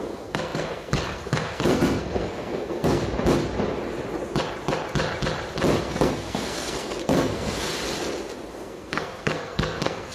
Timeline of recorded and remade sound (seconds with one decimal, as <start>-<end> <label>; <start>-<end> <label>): 0.0-3.0 remade; 3.0-5.8 recorded; 5.8-7.7 remade; 7.7-8.5 recorded; 8.5-10.1 remade